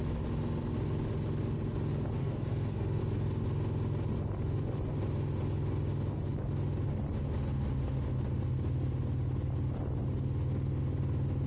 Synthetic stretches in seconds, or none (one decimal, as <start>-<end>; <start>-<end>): 2.2-3.0